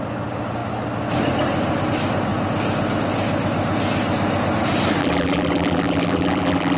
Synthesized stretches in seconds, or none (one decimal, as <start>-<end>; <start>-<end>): 5.0-6.8